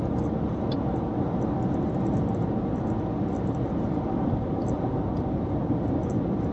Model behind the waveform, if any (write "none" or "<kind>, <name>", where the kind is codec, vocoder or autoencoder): none